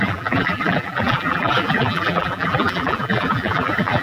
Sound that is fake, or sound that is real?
fake